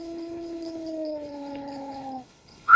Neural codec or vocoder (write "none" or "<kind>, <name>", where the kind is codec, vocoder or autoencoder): codec, HILCodec